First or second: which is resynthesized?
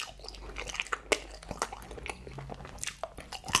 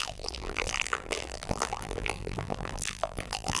second